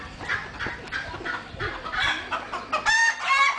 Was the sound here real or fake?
real